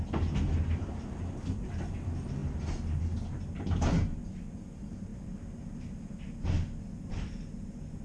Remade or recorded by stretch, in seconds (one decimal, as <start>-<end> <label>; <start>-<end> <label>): 0.0-8.0 recorded